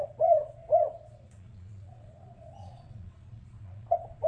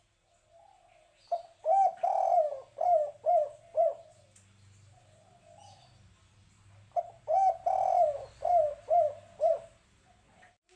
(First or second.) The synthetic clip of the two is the first